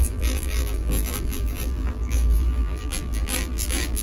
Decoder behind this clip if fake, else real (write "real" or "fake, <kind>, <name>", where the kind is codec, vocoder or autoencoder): fake, vocoder, BigVGAN v2